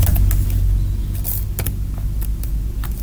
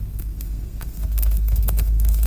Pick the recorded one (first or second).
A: first